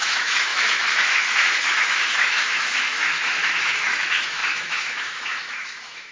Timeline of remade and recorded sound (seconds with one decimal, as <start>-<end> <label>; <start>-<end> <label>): 0.0-6.1 remade